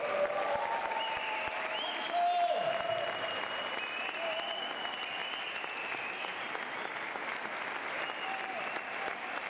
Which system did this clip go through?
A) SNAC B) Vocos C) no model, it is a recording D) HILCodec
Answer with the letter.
C